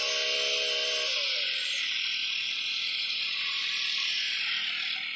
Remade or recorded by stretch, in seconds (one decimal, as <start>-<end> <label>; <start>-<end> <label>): 0.0-2.2 recorded; 2.2-3.4 remade; 3.4-5.2 recorded